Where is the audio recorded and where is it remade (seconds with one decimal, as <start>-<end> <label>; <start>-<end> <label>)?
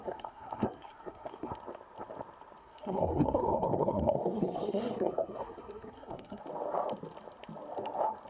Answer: 0.0-1.5 remade; 1.5-2.6 recorded; 2.6-6.4 remade; 6.4-8.3 recorded